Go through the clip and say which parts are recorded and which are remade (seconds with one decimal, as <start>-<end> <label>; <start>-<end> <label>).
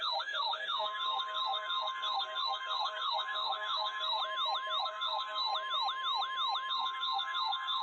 0.0-4.2 remade; 4.2-4.8 recorded; 4.8-5.5 remade; 5.5-6.7 recorded; 6.7-7.8 remade